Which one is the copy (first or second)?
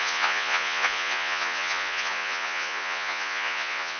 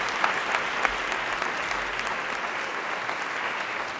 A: first